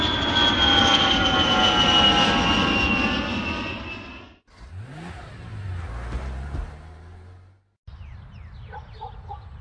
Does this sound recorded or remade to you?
recorded